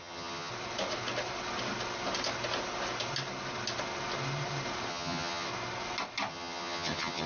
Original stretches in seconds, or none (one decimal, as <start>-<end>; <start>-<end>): 0.5-4.9; 5.5-6.3